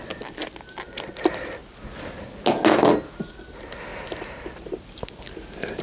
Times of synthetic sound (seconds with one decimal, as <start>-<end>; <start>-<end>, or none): 1.6-2.2; 3.9-5.0